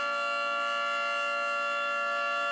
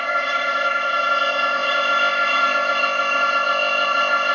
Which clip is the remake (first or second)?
second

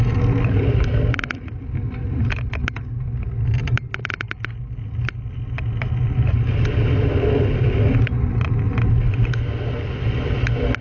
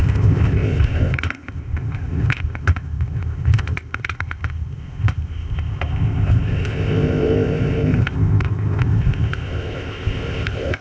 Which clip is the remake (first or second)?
second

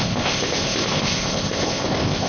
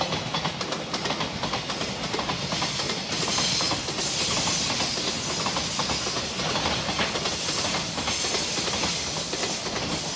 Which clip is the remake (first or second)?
first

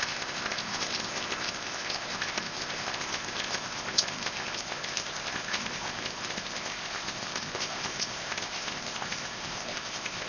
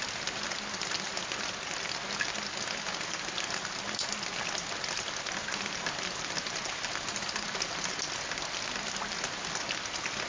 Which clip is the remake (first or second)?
first